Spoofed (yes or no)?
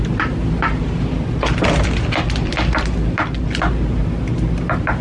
no